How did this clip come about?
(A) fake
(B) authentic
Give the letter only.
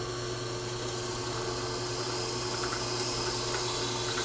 B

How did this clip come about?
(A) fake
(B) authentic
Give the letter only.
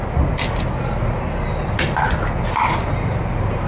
B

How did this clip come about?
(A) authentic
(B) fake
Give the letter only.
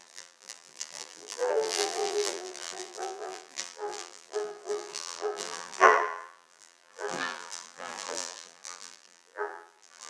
B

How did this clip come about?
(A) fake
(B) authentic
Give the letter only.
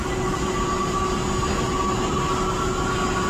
B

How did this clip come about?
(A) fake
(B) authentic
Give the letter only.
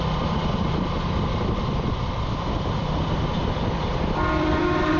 A